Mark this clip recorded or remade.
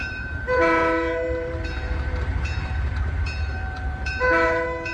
remade